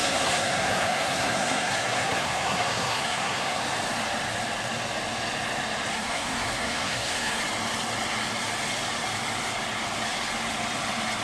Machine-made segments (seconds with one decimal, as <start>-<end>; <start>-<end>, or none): 0.0-3.6; 5.9-7.4